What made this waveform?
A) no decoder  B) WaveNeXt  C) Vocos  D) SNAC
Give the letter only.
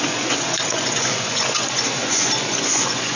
C